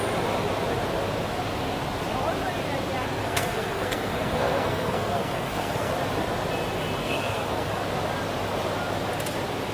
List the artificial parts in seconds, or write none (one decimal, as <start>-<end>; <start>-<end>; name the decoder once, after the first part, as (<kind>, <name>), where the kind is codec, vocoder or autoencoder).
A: 3.2-5.9 (codec, SNAC); 7.0-7.7

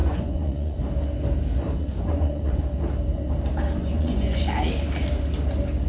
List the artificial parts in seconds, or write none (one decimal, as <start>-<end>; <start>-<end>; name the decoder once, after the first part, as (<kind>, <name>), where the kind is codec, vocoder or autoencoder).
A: 0.0-0.8 (vocoder, Vocos); 1.8-2.6; 3.8-4.4

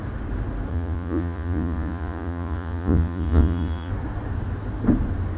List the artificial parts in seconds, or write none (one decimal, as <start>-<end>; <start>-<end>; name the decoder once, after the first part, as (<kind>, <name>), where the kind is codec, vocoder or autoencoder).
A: 0.7-3.9 (vocoder, Vocos)

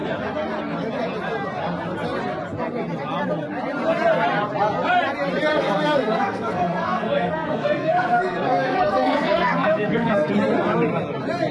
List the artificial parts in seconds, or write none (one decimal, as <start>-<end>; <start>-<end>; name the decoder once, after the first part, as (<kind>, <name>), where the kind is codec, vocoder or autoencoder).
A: 5.5-10.3 (codec, SNAC)

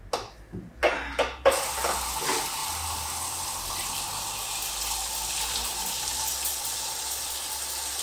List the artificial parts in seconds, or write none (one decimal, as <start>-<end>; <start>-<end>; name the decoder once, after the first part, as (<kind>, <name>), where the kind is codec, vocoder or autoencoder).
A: none

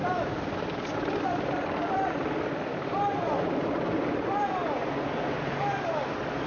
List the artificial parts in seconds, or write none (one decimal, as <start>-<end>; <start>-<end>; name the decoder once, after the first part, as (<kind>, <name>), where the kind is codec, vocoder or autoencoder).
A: 0.0-4.6 (vocoder, BigVGAN v2); 5.6-6.5

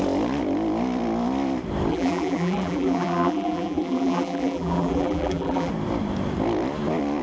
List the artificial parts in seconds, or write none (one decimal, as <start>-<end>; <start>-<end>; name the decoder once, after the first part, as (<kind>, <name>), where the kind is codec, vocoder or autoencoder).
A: 1.9-5.7 (vocoder, BigVGAN v2)

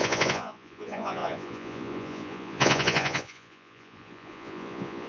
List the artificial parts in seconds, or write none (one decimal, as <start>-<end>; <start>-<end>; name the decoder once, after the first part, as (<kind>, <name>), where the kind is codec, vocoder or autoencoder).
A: 0.0-5.1 (vocoder, Vocos)